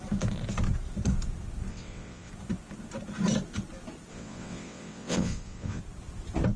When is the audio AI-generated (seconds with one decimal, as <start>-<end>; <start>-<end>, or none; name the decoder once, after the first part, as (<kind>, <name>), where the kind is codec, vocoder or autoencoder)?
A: 1.7-2.3 (vocoder, WaveNeXt); 4.1-5.8